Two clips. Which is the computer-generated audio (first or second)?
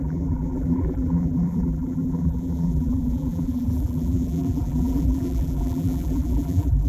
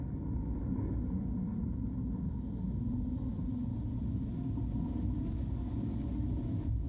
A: first